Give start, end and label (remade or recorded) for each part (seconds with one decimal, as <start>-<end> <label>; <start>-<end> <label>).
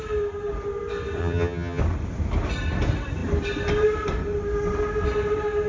0.0-1.2 recorded; 1.2-1.8 remade; 1.8-5.7 recorded